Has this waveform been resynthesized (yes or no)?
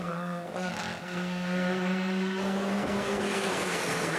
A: yes